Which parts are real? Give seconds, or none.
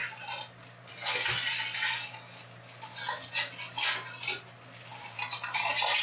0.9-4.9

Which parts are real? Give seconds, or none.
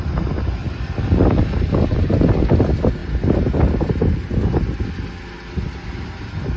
0.0-0.6; 2.2-6.6